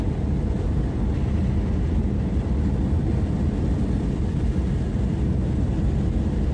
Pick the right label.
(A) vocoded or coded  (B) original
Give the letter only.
B